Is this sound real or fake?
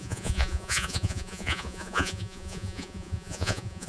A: fake